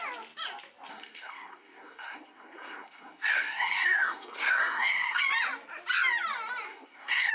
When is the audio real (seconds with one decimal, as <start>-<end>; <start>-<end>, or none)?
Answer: 0.0-0.9; 5.2-6.7